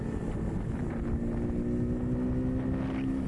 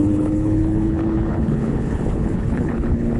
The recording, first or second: first